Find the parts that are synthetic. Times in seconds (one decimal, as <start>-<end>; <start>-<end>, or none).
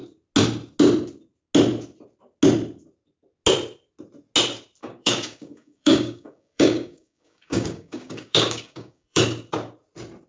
4.8-9.2